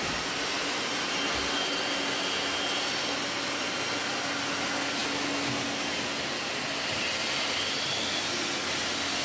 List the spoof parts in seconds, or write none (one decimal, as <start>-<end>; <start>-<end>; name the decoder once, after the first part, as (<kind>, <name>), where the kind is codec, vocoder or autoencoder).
none